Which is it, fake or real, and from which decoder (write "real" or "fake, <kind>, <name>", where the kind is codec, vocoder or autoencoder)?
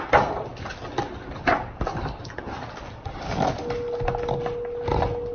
real